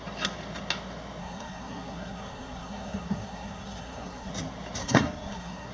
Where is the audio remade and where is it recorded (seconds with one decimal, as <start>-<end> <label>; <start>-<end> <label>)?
0.0-1.2 recorded; 1.2-4.3 remade; 4.3-4.8 recorded; 4.8-5.7 remade